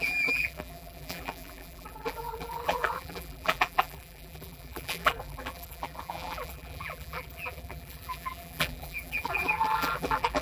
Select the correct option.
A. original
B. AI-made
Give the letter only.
B